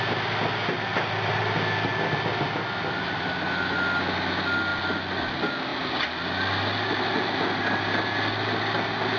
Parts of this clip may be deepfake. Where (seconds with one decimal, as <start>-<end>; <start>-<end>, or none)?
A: 0.9-1.4; 4.7-5.3; 5.7-8.6